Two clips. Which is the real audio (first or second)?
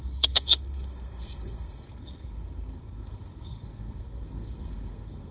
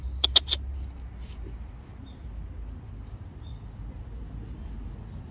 second